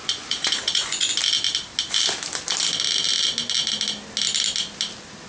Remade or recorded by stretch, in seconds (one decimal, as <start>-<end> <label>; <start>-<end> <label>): 0.0-1.1 remade; 1.1-5.3 recorded